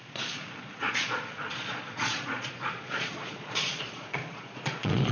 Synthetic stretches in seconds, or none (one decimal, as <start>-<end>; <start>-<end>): 0.0-5.1